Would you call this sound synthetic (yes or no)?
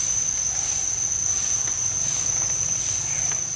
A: no